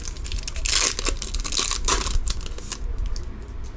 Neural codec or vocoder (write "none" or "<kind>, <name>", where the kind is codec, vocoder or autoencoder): none